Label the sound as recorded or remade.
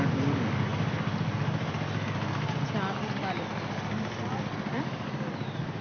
recorded